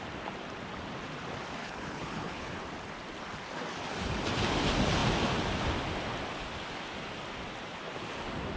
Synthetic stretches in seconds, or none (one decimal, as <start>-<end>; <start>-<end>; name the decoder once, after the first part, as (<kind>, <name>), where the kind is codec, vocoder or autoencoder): 1.6-2.5 (codec, HILCodec)